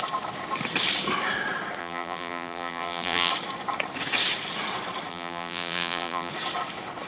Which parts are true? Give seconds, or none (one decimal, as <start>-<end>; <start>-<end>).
0.0-1.8; 3.3-5.1; 6.3-7.1